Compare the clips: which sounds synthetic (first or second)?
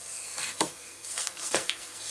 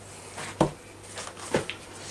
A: first